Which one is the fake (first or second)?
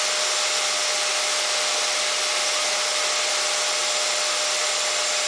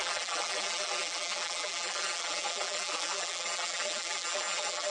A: second